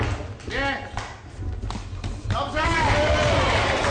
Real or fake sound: real